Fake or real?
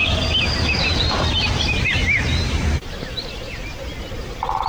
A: real